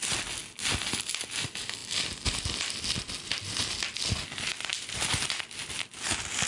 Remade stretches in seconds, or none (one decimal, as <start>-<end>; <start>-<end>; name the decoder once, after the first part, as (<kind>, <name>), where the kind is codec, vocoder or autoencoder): none